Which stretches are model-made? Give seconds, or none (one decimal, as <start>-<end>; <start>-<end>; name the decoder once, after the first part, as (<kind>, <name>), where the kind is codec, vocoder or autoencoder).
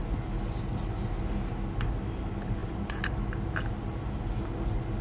none